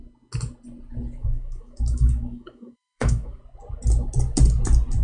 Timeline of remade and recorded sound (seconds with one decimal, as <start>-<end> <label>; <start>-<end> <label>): 0.0-1.2 recorded; 1.2-3.4 remade; 3.4-5.0 recorded